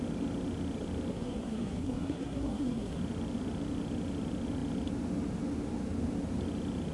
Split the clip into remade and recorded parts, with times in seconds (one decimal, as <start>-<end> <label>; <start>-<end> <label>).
0.0-1.1 recorded; 1.1-3.0 remade; 3.0-6.9 recorded